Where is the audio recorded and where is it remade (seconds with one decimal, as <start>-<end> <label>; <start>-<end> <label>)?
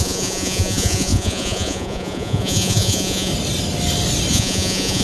0.0-3.3 remade; 3.3-4.3 recorded; 4.3-5.0 remade